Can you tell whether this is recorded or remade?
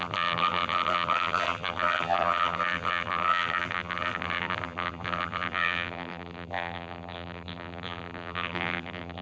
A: remade